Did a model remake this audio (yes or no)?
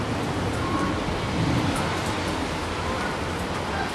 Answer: no